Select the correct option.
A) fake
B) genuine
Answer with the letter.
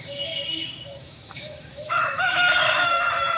A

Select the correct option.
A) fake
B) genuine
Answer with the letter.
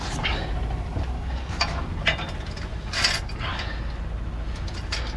B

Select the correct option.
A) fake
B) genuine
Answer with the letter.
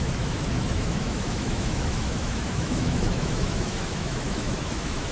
A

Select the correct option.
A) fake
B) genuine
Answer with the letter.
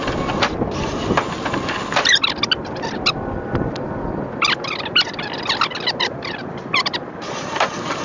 B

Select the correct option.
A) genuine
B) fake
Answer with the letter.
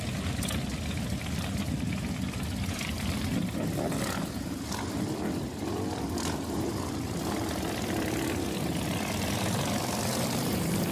A